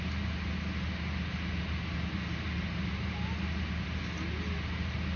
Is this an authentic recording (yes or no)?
yes